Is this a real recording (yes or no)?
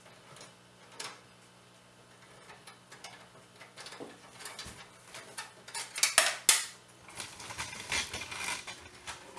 yes